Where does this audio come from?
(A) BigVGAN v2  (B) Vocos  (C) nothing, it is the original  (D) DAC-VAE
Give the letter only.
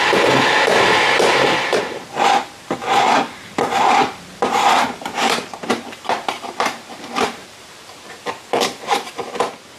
A